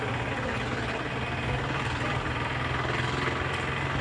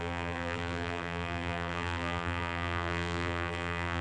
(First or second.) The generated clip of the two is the second